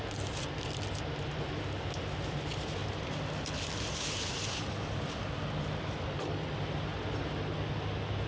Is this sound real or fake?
real